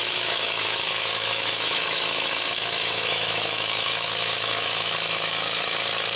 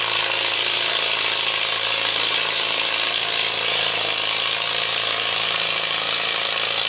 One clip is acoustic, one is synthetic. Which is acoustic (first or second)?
second